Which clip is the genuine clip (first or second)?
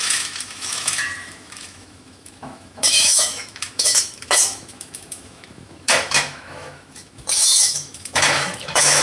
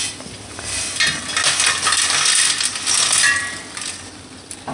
second